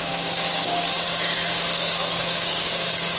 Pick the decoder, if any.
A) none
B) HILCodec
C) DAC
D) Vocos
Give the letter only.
C